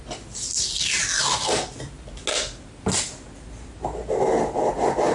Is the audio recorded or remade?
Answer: recorded